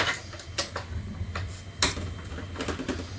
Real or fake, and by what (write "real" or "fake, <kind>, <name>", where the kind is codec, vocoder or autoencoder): real